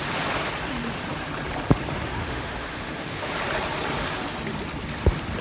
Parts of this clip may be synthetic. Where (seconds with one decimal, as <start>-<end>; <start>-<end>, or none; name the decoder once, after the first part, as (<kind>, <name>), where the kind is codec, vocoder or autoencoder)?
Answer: 2.2-3.3 (autoencoder, DAC-VAE)